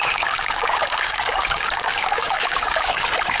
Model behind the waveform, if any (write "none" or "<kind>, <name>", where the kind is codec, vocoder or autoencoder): codec, DAC